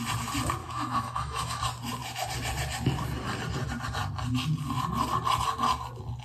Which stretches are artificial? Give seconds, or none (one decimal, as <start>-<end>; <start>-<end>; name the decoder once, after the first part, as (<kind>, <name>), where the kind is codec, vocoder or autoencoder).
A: 0.6-1.6 (autoencoder, DAC-VAE)